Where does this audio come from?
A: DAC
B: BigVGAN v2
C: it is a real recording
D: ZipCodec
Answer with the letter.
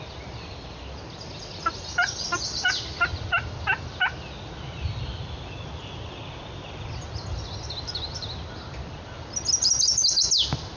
C